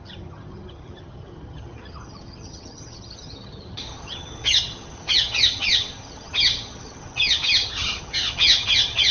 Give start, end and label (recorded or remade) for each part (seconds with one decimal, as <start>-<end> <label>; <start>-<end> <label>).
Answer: 0.0-9.1 remade